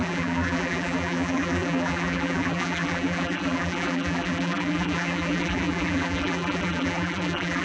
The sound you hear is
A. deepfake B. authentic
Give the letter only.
A